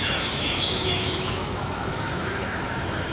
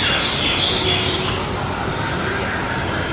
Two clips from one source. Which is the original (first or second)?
second